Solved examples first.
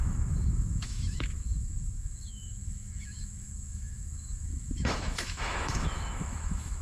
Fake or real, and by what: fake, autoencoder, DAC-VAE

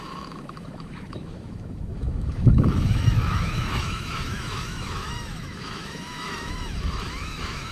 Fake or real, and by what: fake, autoencoder, DAC-VAE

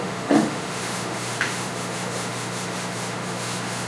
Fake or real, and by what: fake, autoencoder, DAC-VAE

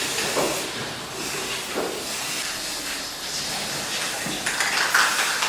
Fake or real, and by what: real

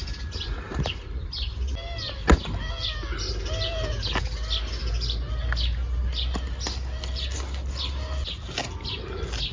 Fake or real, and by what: real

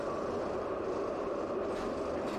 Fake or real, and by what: real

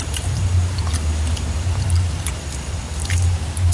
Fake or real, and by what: real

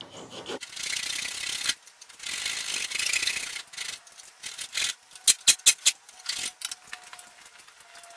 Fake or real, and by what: real